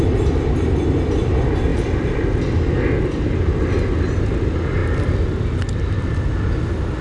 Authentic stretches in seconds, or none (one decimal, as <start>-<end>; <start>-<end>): 0.0-7.0